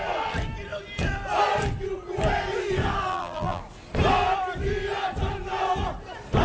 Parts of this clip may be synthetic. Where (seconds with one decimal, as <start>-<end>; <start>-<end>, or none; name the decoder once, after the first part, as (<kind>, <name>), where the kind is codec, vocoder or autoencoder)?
3.1-3.6 (vocoder, BigVGAN v2)